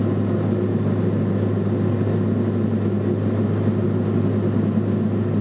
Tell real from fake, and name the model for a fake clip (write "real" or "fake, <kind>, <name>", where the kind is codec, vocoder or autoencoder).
real